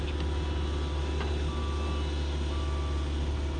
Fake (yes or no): no